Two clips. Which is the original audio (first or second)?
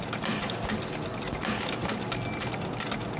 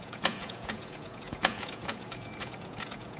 first